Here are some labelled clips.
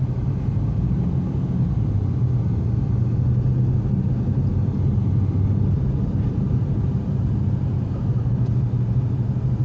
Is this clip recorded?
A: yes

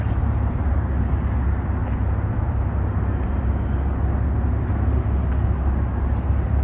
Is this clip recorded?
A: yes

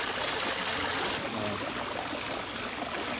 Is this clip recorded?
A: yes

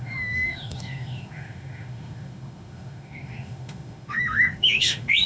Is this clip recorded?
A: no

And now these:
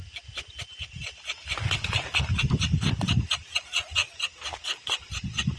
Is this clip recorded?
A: yes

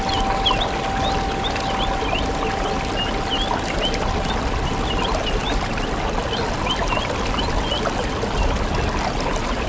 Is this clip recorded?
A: yes